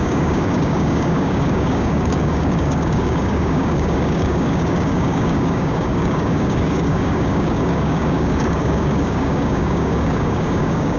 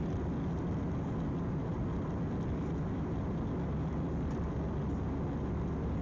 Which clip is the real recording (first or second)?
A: second